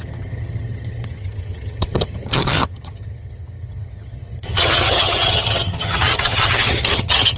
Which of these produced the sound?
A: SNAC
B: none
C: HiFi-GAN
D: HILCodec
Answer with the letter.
C